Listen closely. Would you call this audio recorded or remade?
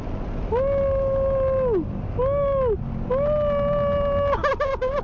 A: recorded